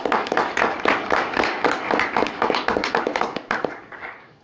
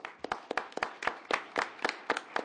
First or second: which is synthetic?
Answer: first